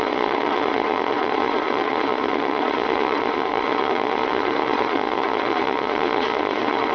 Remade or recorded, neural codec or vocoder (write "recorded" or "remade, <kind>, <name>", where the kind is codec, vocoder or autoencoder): remade, vocoder, Vocos